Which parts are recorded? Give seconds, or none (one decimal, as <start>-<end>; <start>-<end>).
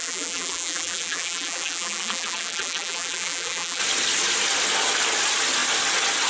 3.8-6.3